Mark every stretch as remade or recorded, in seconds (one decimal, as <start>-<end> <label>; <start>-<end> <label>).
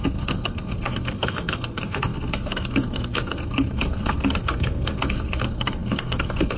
0.0-6.6 remade